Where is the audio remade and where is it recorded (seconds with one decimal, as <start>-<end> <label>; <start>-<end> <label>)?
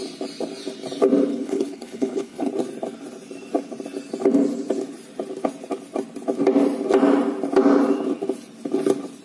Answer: 0.0-1.3 recorded; 1.3-2.5 remade; 2.5-9.2 recorded